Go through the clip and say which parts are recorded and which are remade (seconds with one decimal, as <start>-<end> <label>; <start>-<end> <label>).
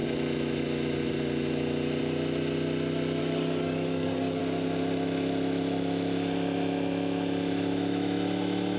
0.0-3.2 recorded; 3.2-4.4 remade; 4.4-8.8 recorded